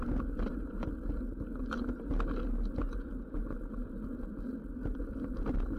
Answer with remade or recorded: recorded